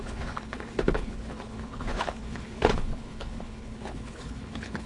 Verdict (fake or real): fake